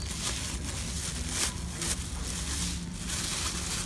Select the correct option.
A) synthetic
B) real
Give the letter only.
B